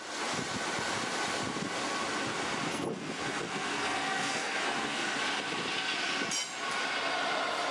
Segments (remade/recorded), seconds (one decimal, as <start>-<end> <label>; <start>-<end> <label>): 0.0-2.7 recorded; 2.7-5.2 remade; 5.2-7.7 recorded